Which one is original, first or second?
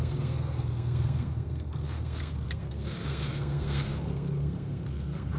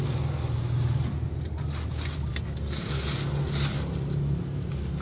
second